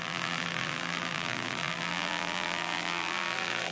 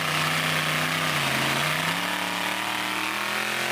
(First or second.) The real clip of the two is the second